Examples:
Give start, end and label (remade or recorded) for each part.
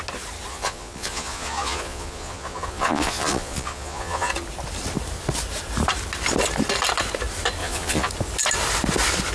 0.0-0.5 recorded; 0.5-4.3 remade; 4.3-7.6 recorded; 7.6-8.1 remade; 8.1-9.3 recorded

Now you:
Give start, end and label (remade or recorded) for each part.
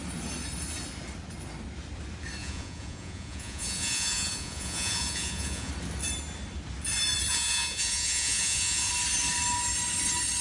0.0-2.4 recorded; 2.4-5.7 remade; 5.7-7.3 recorded; 7.3-8.9 remade; 8.9-10.4 recorded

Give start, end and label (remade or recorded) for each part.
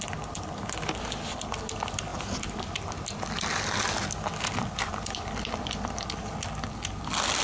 0.0-7.4 recorded